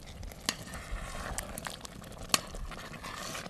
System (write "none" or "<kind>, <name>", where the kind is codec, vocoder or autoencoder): none